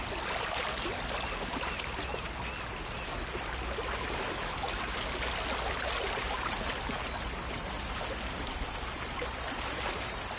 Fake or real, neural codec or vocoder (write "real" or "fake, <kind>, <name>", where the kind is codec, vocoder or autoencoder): real